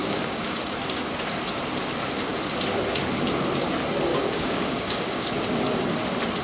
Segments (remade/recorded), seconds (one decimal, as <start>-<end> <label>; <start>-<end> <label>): 0.0-0.6 remade; 0.6-4.1 recorded; 4.1-5.3 remade; 5.3-6.4 recorded